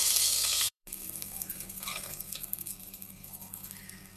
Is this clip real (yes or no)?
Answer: no